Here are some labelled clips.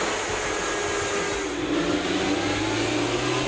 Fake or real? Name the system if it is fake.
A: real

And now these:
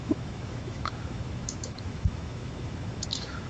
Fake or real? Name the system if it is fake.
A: fake, autoencoder, DAC-VAE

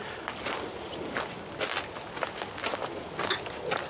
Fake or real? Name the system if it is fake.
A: real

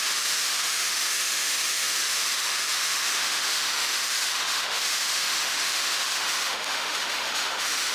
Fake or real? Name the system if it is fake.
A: fake, autoencoder, DAC-VAE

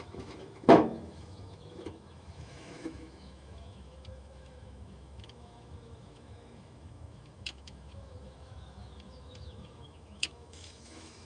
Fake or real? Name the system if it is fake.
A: fake, autoencoder, DAC-VAE